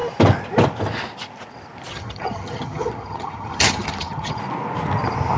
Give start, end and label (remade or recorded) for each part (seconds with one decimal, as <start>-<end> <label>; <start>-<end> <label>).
0.0-1.9 recorded; 1.9-4.4 remade; 4.4-5.4 recorded